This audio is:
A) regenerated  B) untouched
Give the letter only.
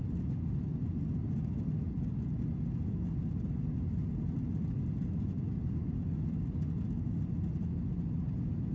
B